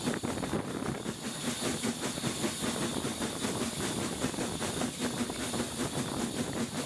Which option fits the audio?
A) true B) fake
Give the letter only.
A